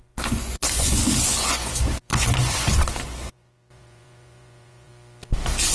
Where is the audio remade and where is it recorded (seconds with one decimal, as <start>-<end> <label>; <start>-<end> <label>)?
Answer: 0.0-4.9 remade; 4.9-5.7 recorded